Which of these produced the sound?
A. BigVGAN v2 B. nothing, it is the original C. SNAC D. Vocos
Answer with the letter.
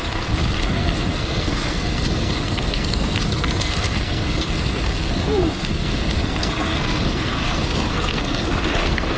C